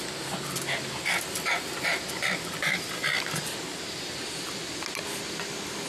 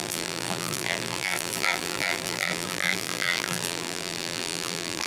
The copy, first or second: second